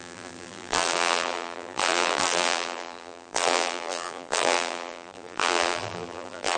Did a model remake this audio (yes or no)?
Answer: yes